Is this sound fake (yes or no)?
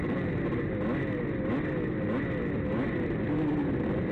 no